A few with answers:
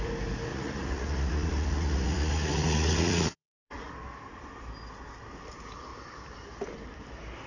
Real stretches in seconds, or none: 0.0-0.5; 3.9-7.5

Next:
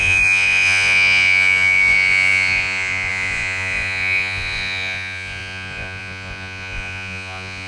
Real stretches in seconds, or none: none